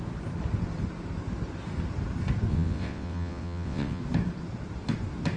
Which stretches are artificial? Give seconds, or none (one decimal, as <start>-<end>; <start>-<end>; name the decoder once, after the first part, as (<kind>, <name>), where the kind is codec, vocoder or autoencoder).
2.5-4.0 (vocoder, WaveNeXt)